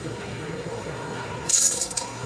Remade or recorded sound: remade